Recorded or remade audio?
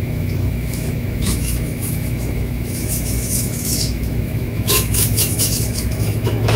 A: remade